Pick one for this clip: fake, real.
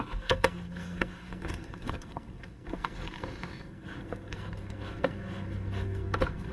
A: fake